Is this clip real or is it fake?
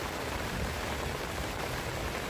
real